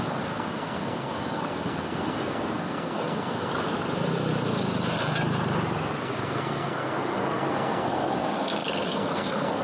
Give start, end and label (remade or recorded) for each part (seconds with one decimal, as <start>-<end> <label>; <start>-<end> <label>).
0.0-3.5 remade; 3.5-6.0 recorded; 6.0-9.6 remade